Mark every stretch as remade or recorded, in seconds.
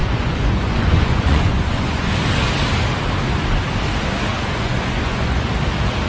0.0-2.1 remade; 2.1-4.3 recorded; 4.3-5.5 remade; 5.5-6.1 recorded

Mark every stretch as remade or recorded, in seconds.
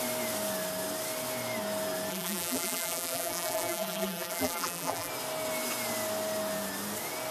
0.0-2.1 recorded; 2.1-5.1 remade; 5.1-7.3 recorded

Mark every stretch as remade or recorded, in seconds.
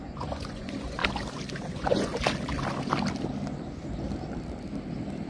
0.0-1.0 remade; 1.0-1.5 recorded; 1.5-2.1 remade; 2.1-5.3 recorded